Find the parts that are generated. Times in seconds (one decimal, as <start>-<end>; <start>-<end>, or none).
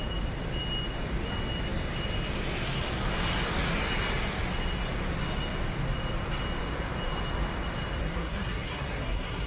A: 8.0-9.5